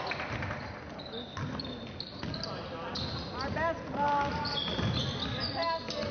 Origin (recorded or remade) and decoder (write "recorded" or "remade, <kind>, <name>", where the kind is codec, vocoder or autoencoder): recorded